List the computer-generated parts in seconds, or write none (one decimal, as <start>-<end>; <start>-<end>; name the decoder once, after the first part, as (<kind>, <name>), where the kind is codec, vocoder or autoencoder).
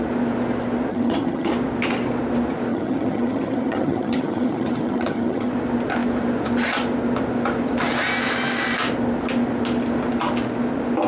0.9-1.5 (vocoder, HiFi-GAN); 2.7-5.5